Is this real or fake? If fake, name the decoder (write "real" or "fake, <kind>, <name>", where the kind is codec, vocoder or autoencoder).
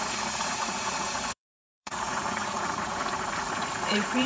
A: fake, vocoder, Vocos